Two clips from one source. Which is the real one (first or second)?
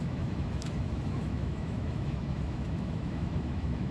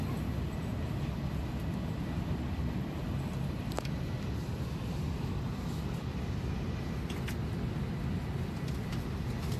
second